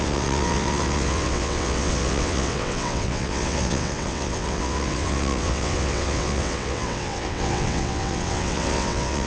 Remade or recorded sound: remade